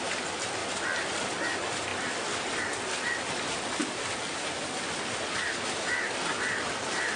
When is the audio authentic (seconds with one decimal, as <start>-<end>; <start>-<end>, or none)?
3.8-4.4